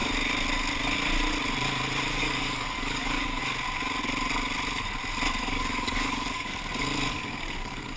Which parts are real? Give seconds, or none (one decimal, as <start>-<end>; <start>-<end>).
0.0-2.2; 3.4-5.4; 6.5-7.1